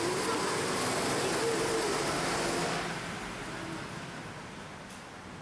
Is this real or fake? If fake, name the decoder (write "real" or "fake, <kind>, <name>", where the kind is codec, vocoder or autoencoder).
real